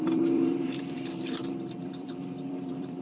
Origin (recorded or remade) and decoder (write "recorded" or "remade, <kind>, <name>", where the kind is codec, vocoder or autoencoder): remade, vocoder, BigVGAN v2